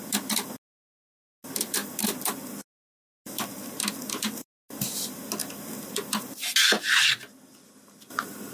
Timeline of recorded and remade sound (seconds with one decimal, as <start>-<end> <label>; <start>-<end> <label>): 0.0-8.5 recorded